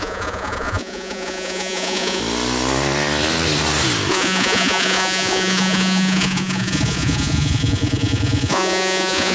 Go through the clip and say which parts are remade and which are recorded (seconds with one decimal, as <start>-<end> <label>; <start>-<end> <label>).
0.0-2.2 remade; 2.2-4.1 recorded; 4.1-9.3 remade